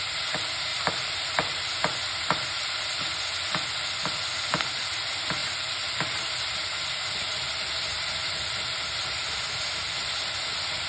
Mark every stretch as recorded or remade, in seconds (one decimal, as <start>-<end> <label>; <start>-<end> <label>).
0.0-0.7 recorded; 0.7-1.8 remade; 1.8-10.9 recorded